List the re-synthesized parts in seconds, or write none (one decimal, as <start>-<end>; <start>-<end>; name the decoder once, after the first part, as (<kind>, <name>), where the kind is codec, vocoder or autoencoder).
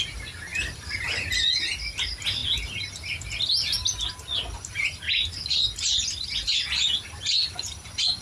none